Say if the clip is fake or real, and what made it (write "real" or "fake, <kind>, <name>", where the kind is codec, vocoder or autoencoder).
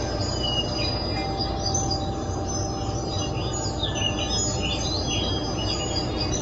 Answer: real